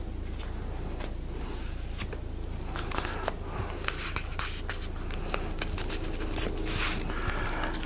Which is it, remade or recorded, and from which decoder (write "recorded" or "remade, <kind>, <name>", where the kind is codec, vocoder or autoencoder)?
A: recorded